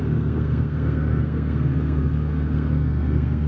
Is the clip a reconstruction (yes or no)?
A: yes